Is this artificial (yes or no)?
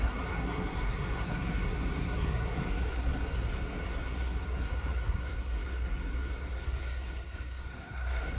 yes